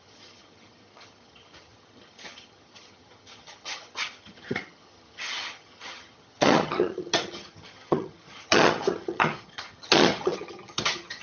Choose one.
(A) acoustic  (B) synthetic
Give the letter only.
B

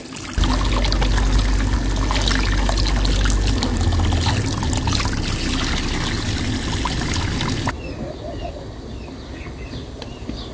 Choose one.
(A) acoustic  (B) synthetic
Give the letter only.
A